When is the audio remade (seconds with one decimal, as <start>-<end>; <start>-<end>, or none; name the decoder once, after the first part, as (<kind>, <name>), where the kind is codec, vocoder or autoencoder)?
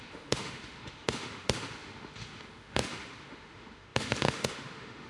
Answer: 0.0-5.1 (autoencoder, DAC-VAE)